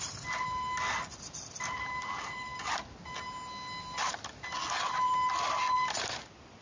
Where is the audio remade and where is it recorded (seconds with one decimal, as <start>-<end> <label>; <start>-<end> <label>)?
0.0-6.6 recorded